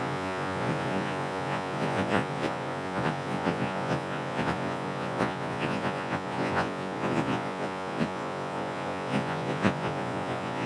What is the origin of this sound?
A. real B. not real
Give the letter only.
B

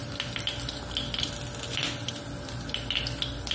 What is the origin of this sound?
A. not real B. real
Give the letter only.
B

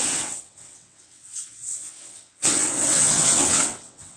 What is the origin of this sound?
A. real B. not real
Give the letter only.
B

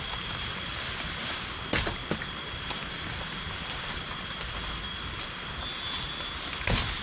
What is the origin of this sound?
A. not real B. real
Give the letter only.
B